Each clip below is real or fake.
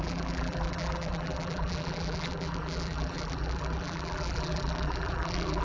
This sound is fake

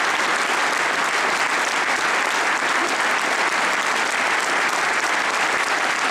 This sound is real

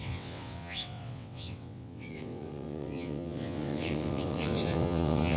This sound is fake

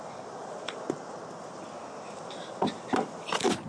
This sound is real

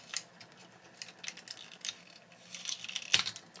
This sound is real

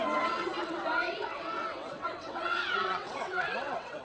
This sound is fake